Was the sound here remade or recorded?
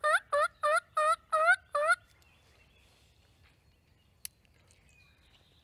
recorded